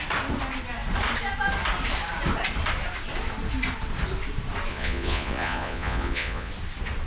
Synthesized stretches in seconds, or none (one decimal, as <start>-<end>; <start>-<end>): 4.7-6.5